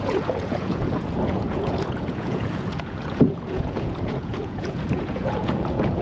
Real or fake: fake